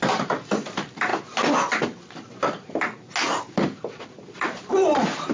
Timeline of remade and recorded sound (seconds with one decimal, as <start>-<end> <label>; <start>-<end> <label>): 0.0-1.1 remade; 1.1-3.4 recorded; 3.4-5.3 remade